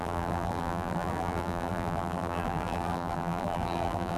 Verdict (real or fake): fake